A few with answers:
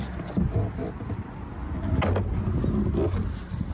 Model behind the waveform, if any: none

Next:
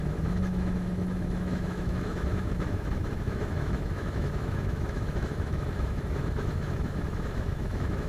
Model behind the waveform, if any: autoencoder, DAC-VAE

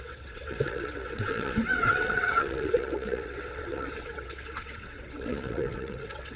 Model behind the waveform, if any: vocoder, WaveNeXt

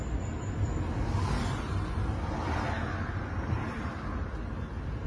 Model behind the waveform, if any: none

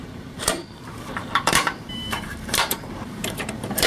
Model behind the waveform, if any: vocoder, BigVGAN v2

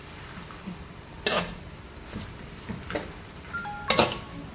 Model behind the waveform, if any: none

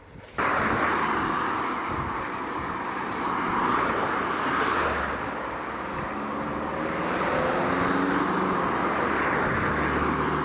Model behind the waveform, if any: none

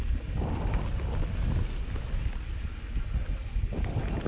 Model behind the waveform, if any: none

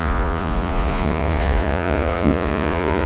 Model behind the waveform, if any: vocoder, Vocos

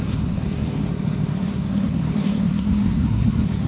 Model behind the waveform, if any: codec, SNAC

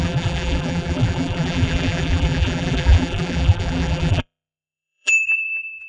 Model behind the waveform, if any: vocoder, BigVGAN v2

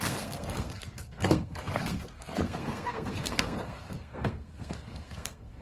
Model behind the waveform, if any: codec, SNAC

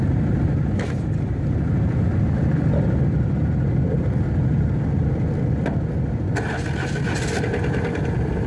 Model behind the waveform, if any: none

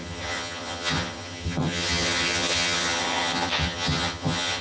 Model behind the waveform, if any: vocoder, HiFi-GAN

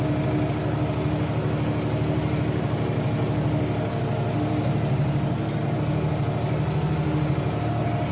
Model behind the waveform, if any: none